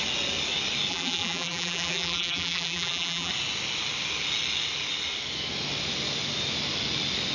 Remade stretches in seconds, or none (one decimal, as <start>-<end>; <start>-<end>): 0.9-3.3